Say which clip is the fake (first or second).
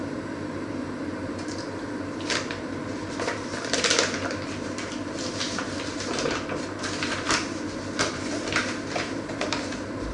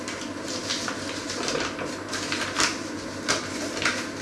first